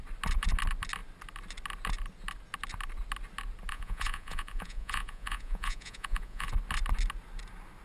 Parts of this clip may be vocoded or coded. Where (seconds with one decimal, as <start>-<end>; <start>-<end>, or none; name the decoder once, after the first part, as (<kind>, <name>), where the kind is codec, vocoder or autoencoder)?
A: 3.7-6.5 (vocoder, Vocos)